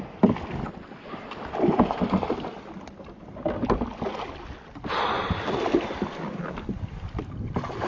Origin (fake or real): real